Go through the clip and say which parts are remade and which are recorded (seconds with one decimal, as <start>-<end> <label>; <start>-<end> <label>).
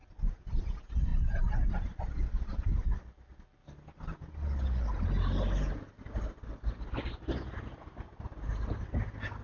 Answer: 0.0-9.4 recorded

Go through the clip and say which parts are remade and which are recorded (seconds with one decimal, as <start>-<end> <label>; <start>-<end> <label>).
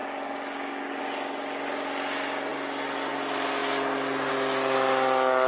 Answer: 0.0-5.5 recorded